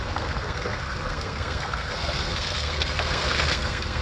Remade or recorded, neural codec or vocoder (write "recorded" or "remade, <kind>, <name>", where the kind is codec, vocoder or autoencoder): remade, codec, SNAC